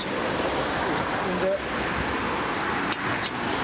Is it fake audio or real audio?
real